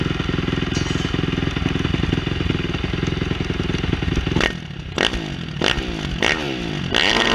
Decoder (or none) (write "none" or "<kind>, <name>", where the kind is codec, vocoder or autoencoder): none